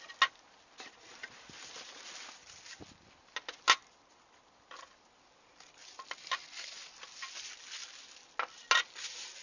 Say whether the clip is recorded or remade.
recorded